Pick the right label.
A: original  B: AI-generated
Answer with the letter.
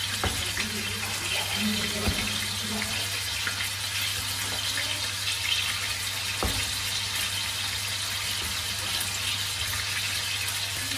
A